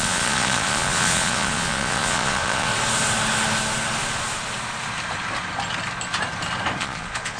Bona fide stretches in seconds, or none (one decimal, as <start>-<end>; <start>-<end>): 2.7-6.8

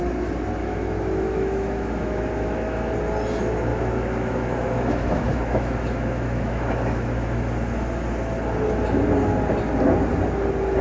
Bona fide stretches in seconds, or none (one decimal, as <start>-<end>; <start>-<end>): 0.0-0.6; 2.9-3.7; 7.4-10.8

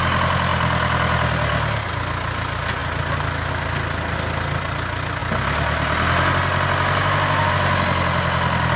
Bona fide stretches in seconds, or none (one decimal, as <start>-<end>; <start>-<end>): 0.0-8.8

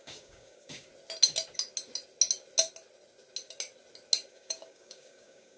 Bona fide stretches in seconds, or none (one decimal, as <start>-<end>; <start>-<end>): 0.9-4.3

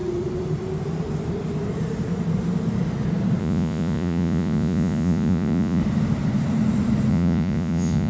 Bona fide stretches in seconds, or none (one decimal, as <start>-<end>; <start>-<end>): 0.0-3.4; 5.8-7.1

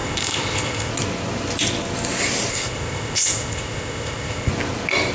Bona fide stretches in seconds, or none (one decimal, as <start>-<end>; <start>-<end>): 0.9-2.5; 4.5-5.1